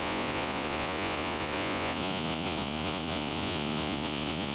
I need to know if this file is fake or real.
fake